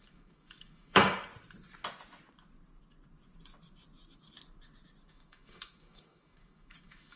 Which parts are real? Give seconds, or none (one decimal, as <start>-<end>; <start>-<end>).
1.3-5.1